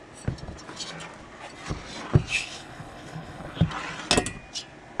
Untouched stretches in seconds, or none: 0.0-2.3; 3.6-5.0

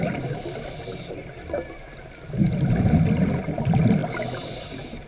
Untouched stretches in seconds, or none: 0.0-5.1

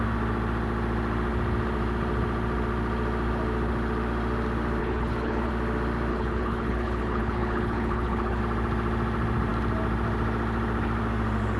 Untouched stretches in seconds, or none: 0.0-4.8; 5.5-6.1; 8.4-11.6

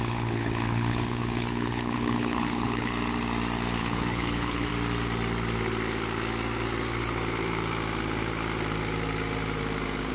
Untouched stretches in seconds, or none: 2.9-3.8; 4.7-10.1

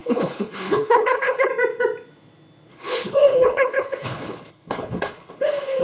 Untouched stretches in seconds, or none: 1.5-2.7